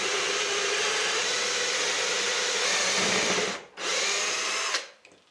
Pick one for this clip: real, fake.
real